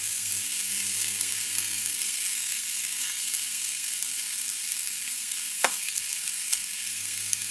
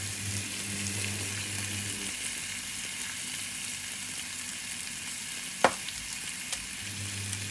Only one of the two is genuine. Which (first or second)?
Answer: second